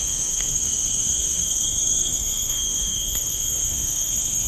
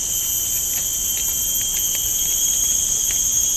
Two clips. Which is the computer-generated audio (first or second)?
first